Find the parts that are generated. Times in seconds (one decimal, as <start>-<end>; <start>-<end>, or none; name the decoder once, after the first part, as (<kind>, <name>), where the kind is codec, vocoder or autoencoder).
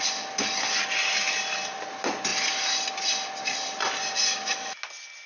4.3-4.8 (autoencoder, DAC-VAE)